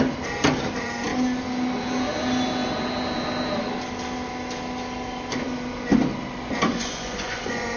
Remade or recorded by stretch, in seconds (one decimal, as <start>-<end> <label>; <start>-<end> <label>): 0.0-6.7 recorded; 6.7-7.8 remade